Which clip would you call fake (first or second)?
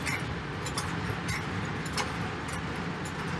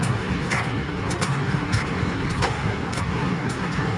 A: second